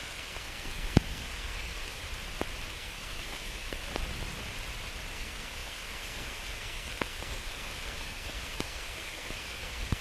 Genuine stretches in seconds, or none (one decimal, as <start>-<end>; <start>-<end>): 2.0-2.7; 3.9-5.1